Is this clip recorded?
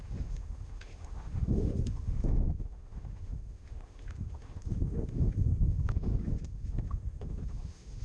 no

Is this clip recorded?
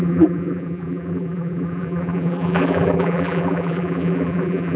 no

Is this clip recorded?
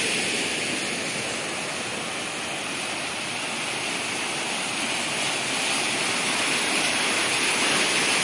yes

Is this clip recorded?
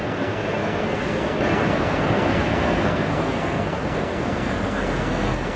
no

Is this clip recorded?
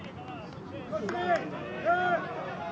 yes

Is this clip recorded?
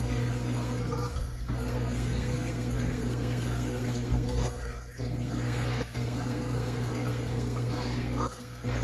no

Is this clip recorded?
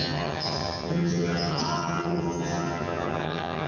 no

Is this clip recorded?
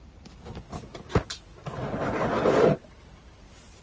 yes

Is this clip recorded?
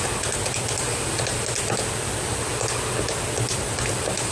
yes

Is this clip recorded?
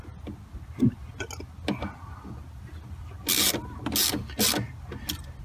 yes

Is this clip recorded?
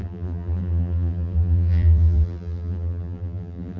no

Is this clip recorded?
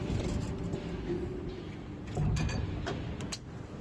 yes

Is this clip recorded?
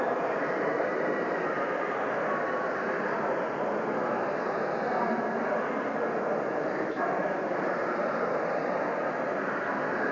yes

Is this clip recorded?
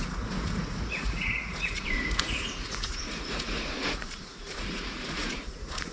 no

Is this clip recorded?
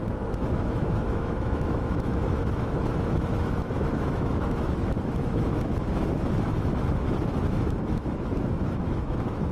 no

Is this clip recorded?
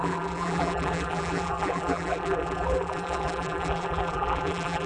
no